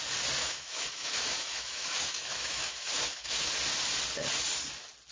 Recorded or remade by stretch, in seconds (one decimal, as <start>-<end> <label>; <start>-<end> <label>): 0.0-0.4 recorded; 0.4-3.5 remade; 3.5-5.1 recorded